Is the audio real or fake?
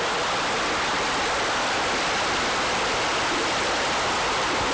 real